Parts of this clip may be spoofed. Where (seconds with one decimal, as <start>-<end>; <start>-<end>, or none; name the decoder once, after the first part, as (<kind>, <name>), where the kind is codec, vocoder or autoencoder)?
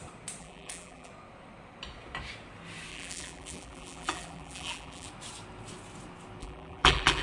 0.4-1.1 (vocoder, BigVGAN v2); 2.9-5.1; 6.4-7.2